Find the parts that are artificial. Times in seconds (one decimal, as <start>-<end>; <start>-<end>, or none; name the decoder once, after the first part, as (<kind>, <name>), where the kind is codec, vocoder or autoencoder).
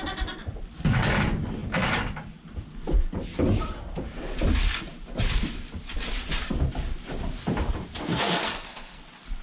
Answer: 8.1-9.0 (codec, SNAC)